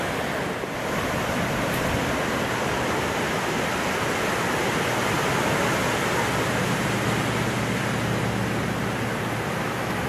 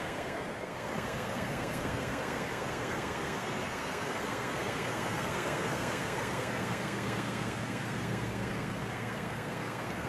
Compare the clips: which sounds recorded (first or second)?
first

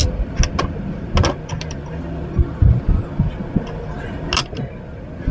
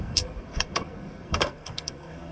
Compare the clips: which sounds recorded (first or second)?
first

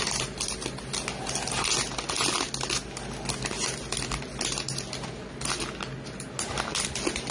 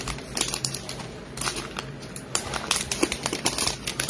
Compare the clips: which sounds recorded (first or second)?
first